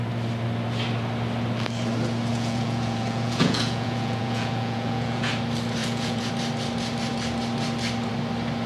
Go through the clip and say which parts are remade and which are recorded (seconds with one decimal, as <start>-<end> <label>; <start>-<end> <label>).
0.0-2.3 recorded; 2.3-5.3 remade; 5.3-5.8 recorded; 5.8-6.3 remade; 6.3-8.7 recorded